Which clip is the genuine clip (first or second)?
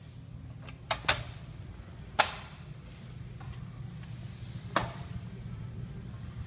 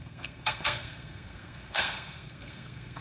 first